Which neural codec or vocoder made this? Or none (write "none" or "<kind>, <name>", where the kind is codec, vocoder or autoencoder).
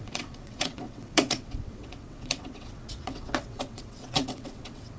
vocoder, WaveNeXt